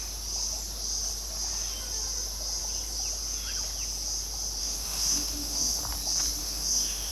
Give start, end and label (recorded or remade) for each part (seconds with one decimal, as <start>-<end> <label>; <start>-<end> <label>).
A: 0.0-4.6 recorded; 4.6-5.8 remade; 5.8-6.4 recorded; 6.4-7.1 remade